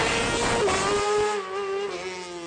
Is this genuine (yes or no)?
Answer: yes